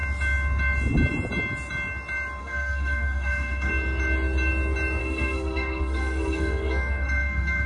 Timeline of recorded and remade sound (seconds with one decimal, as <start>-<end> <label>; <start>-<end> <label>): 0.0-2.4 recorded; 2.4-3.7 remade; 3.7-5.0 recorded; 5.0-7.7 remade

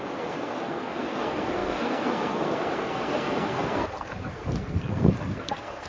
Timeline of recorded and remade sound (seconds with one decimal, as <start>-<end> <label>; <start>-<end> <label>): 0.0-5.9 remade

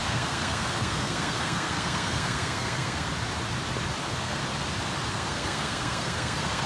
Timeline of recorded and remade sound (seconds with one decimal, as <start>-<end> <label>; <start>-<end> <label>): 0.0-3.1 remade; 3.1-4.0 recorded; 4.0-4.4 remade; 4.4-5.1 recorded; 5.1-6.7 remade

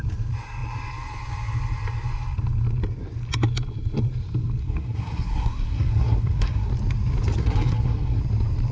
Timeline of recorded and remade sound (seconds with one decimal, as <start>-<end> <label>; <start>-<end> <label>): 0.0-4.6 recorded; 4.6-6.7 remade; 6.7-7.4 recorded; 7.4-8.2 remade; 8.2-8.7 recorded

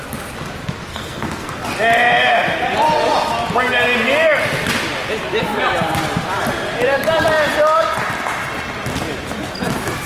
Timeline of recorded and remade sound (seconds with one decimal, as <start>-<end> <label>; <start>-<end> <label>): 0.0-0.9 recorded; 0.9-1.5 remade; 1.5-10.1 recorded

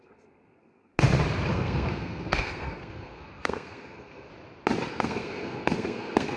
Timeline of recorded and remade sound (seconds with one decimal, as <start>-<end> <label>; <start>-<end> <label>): 0.0-0.9 remade; 0.9-1.5 recorded; 1.5-4.3 remade; 4.3-4.9 recorded; 4.9-6.4 remade

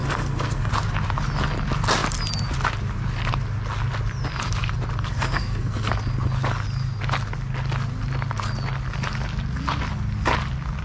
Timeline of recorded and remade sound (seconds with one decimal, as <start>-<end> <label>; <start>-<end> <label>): 0.0-0.7 remade; 0.7-5.1 recorded; 5.1-5.9 remade; 5.9-10.8 recorded